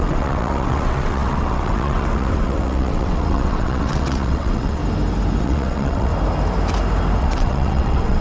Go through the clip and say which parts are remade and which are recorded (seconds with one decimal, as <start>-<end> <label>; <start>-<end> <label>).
0.0-4.8 remade; 4.8-5.4 recorded; 5.4-6.1 remade; 6.1-7.2 recorded; 7.2-8.2 remade